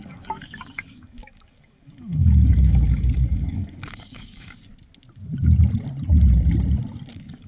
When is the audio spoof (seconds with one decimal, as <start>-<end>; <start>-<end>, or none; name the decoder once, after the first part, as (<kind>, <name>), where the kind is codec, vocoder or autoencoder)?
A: 0.0-4.7 (codec, DAC); 7.1-7.5

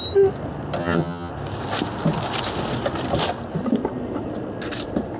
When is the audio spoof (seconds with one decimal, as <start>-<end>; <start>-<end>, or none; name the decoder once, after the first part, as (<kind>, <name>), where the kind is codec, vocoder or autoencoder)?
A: 0.8-1.3 (vocoder, HiFi-GAN)

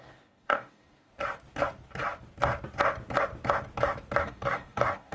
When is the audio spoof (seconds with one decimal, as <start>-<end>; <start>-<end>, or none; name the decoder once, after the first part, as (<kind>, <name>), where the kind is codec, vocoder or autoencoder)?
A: 0.0-1.1 (codec, DAC); 4.2-5.1

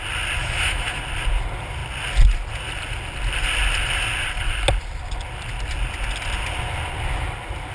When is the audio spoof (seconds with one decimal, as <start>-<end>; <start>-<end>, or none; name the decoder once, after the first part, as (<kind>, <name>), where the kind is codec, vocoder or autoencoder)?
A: 0.4-1.0 (autoencoder, DAC-VAE)

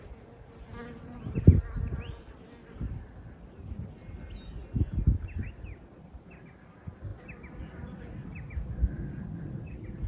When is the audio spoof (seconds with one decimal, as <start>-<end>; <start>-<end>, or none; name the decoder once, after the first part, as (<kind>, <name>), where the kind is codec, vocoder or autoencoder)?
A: none

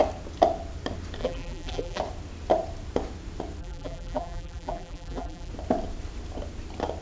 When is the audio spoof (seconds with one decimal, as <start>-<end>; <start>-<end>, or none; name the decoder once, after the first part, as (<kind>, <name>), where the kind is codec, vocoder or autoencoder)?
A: 1.2-2.0 (vocoder, BigVGAN v2); 3.6-5.5